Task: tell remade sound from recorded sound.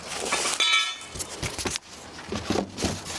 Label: recorded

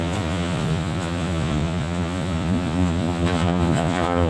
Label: remade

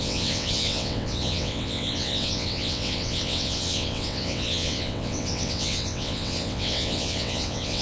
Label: remade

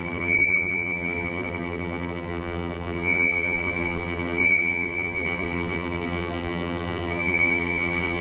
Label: remade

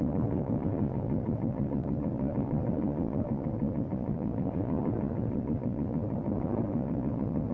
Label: remade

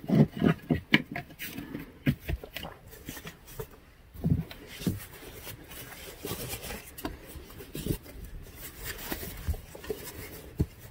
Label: recorded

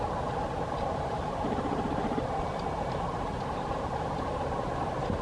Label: remade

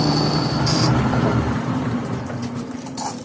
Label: recorded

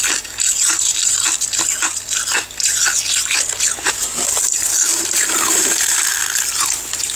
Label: recorded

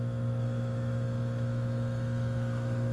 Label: remade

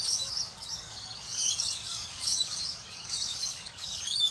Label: remade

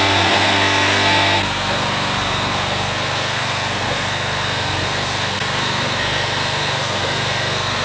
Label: remade